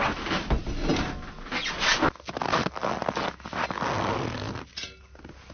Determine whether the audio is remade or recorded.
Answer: recorded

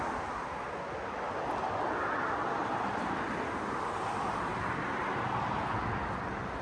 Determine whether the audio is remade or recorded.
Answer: recorded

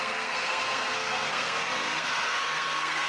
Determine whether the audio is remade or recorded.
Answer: remade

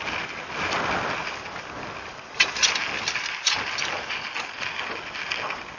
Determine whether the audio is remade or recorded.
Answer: recorded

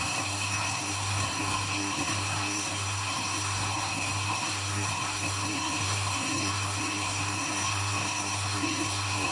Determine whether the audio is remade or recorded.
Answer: remade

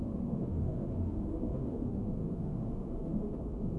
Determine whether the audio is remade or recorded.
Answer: remade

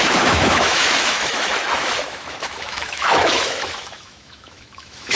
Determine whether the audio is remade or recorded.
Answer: remade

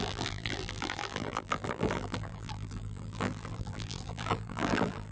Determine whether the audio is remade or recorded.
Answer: remade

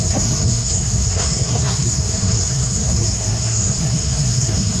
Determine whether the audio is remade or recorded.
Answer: remade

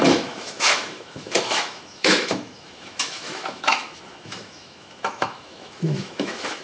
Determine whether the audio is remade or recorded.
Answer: remade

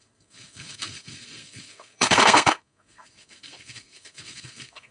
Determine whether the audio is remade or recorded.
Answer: remade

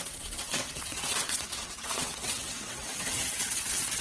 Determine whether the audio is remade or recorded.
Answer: remade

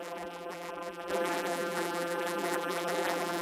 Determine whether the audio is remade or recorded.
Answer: remade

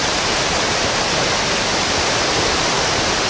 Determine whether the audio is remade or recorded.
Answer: recorded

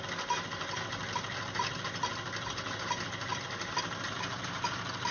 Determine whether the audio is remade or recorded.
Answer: recorded